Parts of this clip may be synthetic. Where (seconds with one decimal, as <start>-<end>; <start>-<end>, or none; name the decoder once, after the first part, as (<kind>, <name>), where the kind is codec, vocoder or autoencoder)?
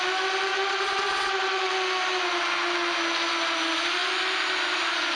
0.5-1.7 (vocoder, WaveNeXt)